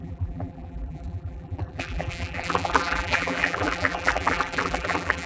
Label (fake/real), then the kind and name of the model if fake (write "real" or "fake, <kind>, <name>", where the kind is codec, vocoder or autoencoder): fake, vocoder, BigVGAN v2